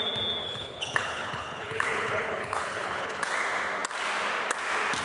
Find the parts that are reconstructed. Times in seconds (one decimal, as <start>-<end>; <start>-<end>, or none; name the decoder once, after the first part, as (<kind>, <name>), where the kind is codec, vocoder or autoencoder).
0.4-3.3 (codec, HILCodec)